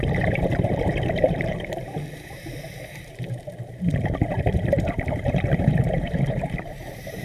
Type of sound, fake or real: fake